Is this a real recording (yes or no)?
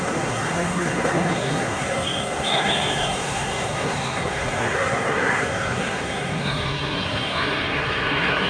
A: no